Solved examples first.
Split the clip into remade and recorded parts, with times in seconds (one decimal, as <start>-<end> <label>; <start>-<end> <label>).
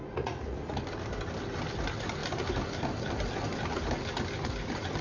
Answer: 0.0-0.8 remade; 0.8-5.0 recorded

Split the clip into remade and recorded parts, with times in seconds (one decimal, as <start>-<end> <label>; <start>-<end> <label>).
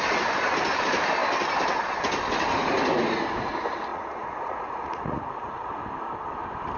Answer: 0.0-3.9 recorded; 3.9-5.8 remade; 5.8-6.8 recorded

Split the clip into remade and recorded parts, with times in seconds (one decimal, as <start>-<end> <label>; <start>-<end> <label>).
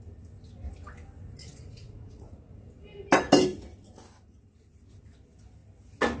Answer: 0.0-1.4 recorded; 1.4-2.7 remade; 2.7-6.2 recorded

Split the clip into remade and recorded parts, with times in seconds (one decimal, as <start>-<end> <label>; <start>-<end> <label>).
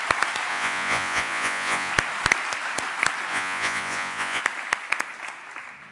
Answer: 0.0-0.5 recorded; 0.5-1.9 remade; 1.9-3.3 recorded; 3.3-4.4 remade; 4.4-5.9 recorded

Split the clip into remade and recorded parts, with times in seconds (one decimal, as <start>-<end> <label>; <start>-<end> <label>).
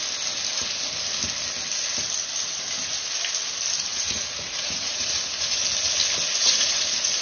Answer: 0.0-3.9 recorded; 3.9-5.6 remade; 5.6-6.3 recorded; 6.3-6.8 remade; 6.8-7.2 recorded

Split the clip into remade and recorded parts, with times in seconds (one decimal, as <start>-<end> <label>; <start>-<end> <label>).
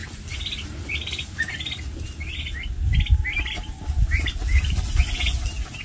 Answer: 0.0-5.8 recorded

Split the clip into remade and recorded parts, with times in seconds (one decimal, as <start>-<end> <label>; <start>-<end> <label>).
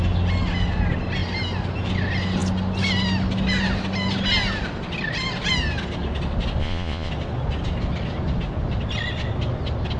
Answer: 0.0-6.6 recorded; 6.6-7.1 remade; 7.1-10.0 recorded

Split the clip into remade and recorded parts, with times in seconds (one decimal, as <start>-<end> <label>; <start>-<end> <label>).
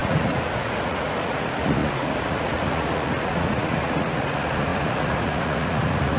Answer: 0.0-6.2 remade